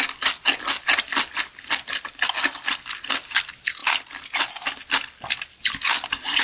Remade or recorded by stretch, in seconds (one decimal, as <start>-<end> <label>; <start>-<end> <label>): 0.0-6.4 recorded